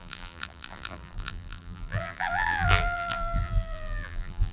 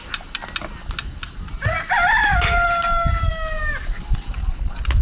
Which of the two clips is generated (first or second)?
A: first